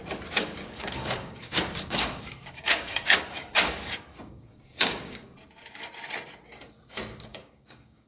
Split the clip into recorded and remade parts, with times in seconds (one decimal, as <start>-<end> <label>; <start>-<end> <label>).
0.0-0.4 recorded; 0.4-5.2 remade; 5.2-7.3 recorded; 7.3-8.1 remade